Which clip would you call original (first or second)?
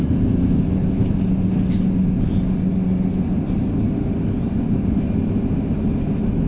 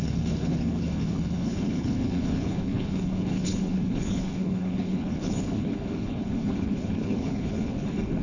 first